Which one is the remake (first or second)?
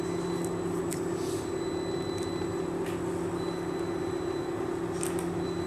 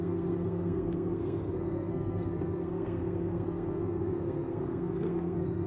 second